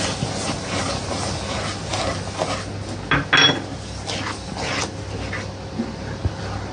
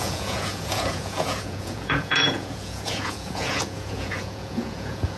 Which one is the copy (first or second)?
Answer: second